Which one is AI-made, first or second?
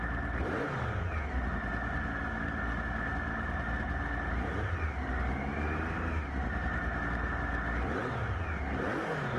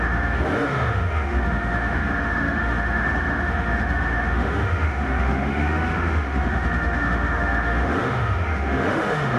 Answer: second